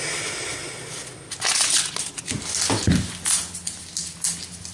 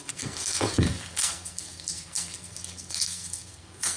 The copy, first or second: second